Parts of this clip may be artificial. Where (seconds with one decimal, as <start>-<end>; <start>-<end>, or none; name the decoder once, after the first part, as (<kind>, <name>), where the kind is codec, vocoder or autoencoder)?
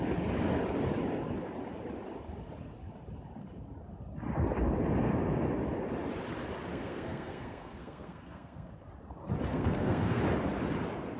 6.7-8.7 (codec, SNAC); 9.5-10.2